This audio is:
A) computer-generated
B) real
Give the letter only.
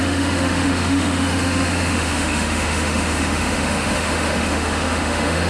A